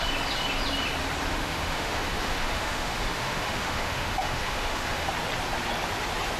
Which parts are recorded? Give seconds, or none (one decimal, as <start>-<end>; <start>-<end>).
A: 0.0-1.3; 5.1-6.4